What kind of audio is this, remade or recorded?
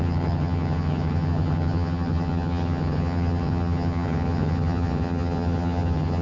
remade